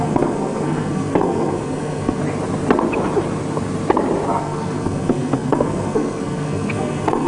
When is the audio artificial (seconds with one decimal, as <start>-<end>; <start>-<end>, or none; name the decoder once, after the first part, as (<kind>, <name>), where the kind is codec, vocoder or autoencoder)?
0.0-2.2 (codec, SNAC); 4.4-7.3